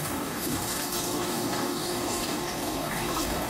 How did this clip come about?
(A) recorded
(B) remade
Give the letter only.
B